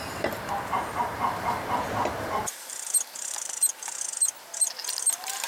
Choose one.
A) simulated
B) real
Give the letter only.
A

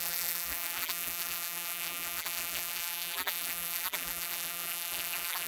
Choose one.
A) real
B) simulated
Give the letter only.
B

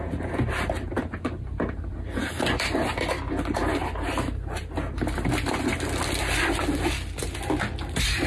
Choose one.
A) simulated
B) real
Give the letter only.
A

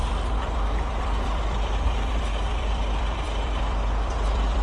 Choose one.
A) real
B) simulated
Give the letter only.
B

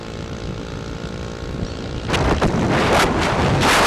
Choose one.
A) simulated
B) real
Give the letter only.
B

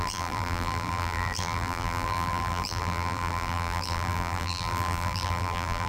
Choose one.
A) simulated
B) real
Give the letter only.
A